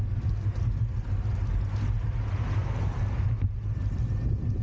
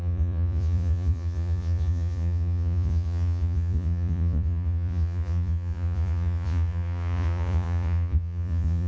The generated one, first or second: second